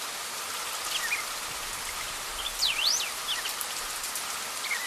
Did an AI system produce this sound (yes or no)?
no